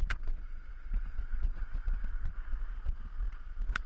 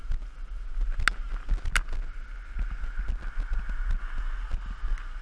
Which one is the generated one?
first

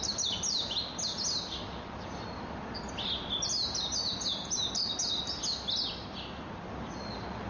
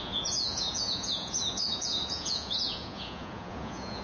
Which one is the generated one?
second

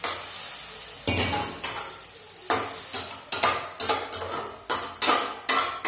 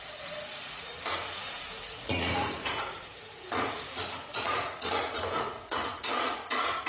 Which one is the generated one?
second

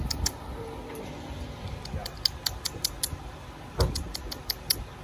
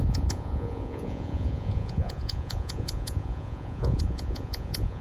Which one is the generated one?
second